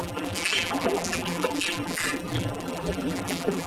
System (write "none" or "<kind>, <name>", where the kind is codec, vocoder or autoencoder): vocoder, BigVGAN v2